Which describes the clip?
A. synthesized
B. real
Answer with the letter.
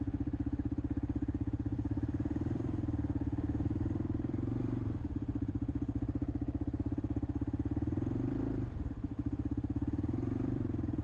A